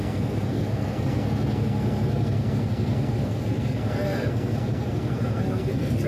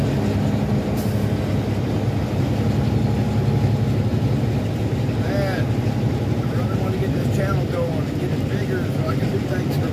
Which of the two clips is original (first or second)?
second